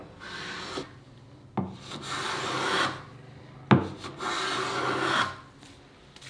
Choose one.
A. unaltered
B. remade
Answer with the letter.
A